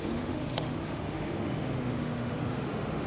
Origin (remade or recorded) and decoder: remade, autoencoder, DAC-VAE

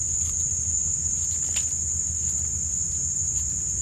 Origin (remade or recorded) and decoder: recorded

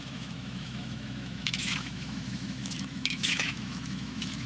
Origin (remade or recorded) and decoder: remade, autoencoder, DAC-VAE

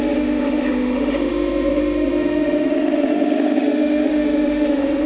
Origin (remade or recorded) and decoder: remade, autoencoder, DAC-VAE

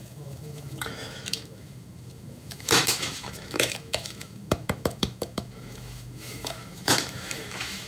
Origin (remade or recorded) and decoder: remade, autoencoder, DAC-VAE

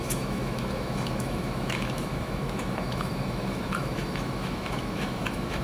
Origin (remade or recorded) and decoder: remade, autoencoder, DAC-VAE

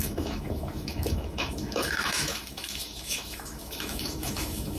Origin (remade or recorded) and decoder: remade, autoencoder, DAC-VAE